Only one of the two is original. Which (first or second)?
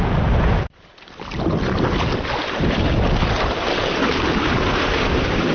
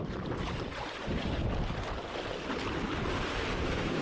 first